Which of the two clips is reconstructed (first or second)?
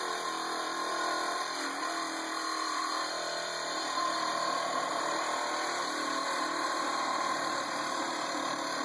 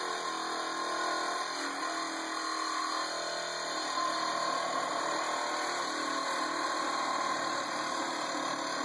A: first